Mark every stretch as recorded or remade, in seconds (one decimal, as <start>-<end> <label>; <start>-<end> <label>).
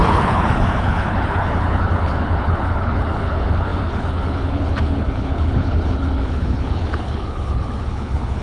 0.0-8.4 remade